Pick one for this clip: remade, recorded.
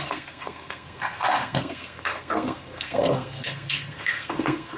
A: remade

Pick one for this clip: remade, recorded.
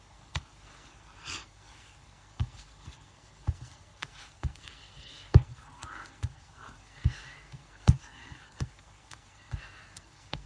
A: remade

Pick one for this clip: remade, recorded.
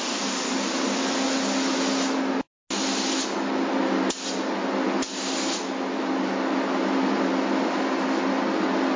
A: recorded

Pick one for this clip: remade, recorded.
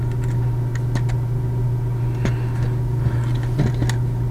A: recorded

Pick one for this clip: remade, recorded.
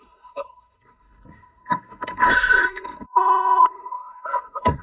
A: remade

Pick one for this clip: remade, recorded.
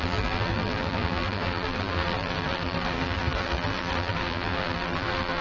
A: remade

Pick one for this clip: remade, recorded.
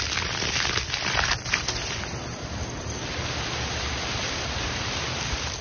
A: remade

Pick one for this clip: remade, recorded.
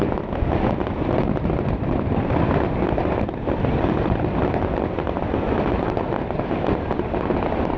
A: remade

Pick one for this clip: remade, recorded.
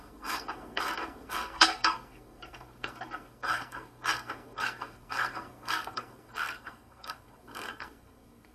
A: remade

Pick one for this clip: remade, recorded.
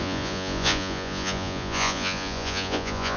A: remade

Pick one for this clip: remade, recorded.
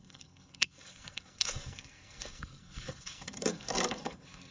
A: remade